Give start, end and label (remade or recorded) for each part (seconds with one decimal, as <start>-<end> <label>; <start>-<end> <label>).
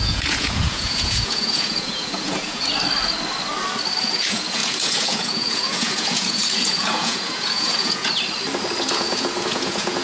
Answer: 0.0-2.7 remade; 2.7-4.0 recorded; 4.0-8.1 remade; 8.1-8.8 recorded; 8.8-10.0 remade